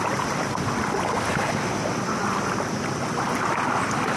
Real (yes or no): yes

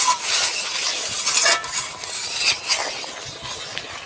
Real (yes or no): yes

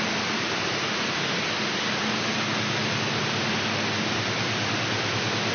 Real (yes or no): yes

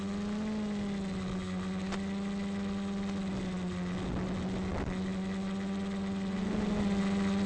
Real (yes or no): yes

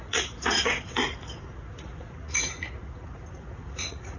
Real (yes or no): no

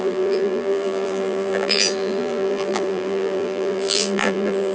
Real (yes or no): no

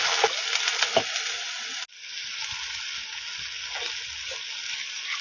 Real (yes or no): yes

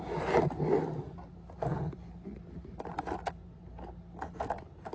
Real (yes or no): yes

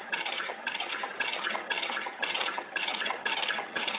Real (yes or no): no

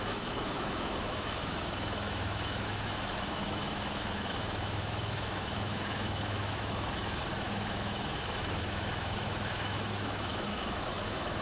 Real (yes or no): no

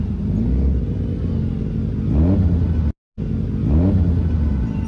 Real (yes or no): yes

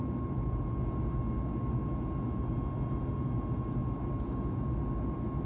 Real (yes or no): yes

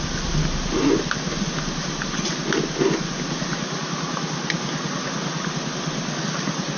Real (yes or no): yes